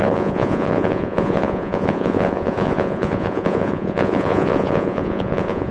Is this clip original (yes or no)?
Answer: no